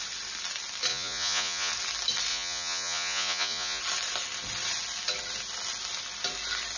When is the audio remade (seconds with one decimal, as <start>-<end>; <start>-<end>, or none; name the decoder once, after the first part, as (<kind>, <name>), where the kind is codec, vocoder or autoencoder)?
0.9-1.7 (vocoder, Vocos); 2.3-3.8